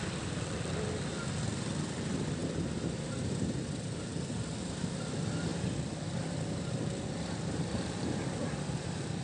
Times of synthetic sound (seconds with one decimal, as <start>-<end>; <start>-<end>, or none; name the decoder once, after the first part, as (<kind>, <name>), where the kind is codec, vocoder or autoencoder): 0.0-2.4 (vocoder, BigVGAN v2); 3.2-4.1; 5.0-9.2